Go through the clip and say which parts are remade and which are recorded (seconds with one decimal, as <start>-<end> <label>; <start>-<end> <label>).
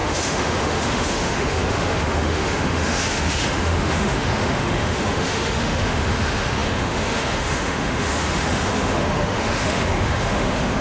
0.0-10.8 remade